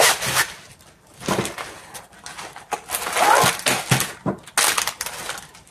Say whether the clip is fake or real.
real